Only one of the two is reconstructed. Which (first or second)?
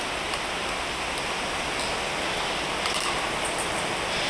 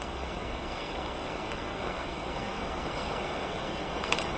second